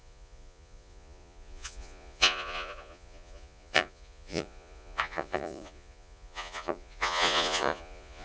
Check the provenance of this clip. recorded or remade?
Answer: remade